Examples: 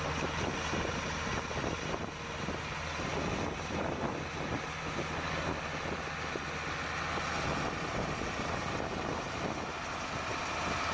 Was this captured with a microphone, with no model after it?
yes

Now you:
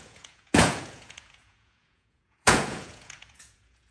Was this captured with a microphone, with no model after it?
no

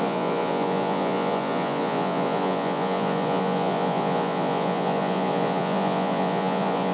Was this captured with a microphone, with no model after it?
no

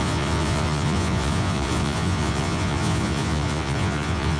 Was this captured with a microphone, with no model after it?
no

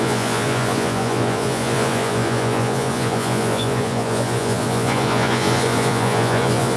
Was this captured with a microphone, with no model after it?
no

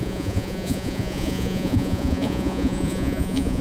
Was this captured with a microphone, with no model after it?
no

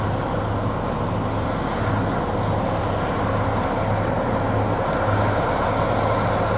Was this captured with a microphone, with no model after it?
yes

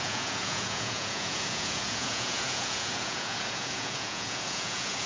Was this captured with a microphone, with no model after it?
no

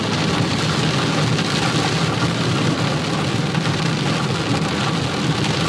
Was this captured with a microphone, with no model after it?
yes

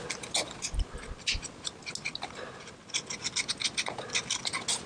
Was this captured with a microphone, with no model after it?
yes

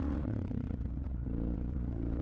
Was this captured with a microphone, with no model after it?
no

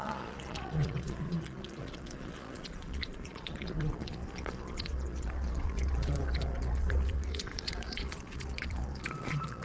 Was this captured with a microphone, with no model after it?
no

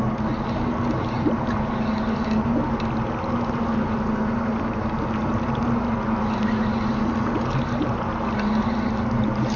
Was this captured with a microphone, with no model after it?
yes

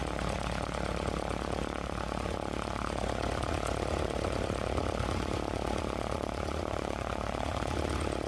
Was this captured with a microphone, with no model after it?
no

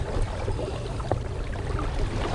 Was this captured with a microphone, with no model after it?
yes